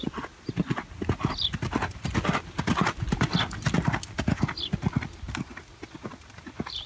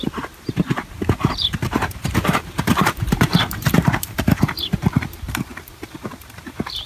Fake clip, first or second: second